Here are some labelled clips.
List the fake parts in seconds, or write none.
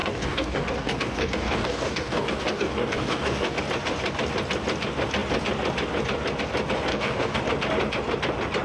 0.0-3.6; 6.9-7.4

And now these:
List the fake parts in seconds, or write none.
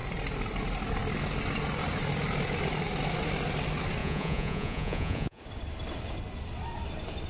4.0-5.4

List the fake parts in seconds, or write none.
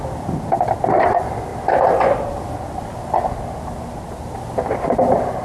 none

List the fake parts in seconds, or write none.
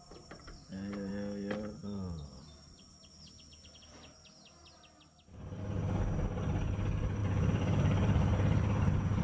0.6-1.1; 1.8-3.1; 7.2-9.2